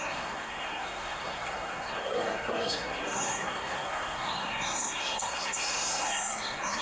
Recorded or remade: remade